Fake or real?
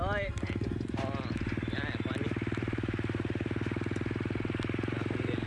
real